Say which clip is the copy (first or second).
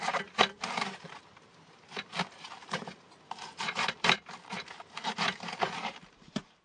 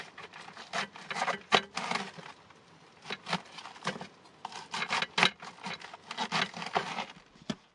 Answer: first